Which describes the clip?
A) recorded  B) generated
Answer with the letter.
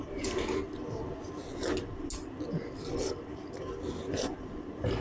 A